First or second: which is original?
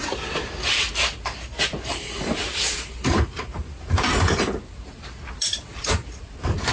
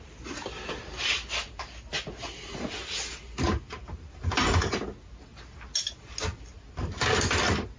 second